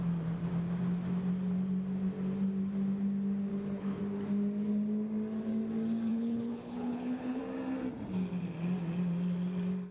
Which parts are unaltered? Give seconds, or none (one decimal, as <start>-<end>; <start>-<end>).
0.0-3.5; 4.0-6.1; 7.4-9.9